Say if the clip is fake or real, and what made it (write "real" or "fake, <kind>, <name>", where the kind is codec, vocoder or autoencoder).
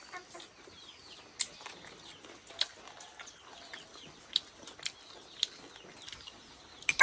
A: real